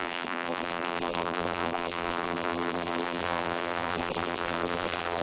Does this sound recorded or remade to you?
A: remade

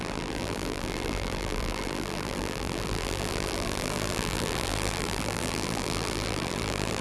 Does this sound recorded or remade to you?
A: remade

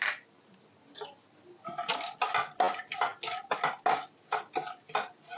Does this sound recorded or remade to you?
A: recorded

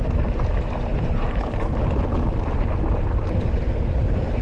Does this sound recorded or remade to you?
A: remade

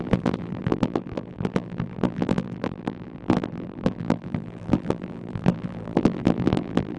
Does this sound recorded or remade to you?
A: remade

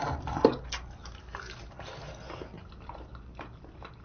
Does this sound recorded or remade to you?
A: recorded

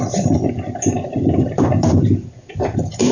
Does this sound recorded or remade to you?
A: remade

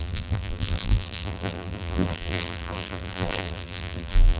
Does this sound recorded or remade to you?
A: remade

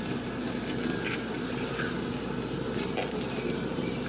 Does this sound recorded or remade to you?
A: recorded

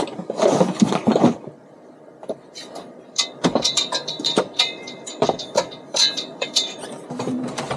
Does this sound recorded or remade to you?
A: remade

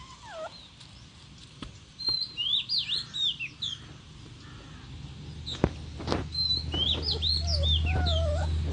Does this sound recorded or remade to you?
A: recorded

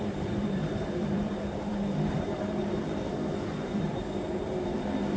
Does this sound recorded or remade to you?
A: remade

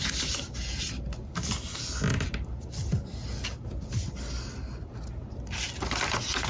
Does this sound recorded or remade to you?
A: recorded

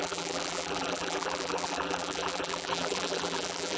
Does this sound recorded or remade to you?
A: remade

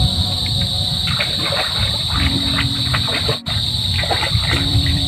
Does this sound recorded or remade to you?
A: remade